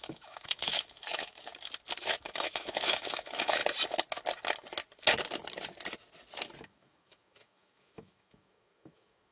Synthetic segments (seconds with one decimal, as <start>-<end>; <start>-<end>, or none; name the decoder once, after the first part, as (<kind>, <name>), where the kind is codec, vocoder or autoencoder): 0.0-1.5 (autoencoder, DAC-VAE); 2.0-3.6; 6.6-9.3